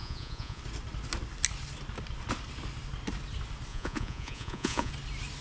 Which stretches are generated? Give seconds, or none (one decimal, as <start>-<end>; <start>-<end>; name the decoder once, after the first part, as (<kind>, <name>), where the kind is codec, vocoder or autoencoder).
0.0-0.6 (vocoder, Vocos); 3.7-4.9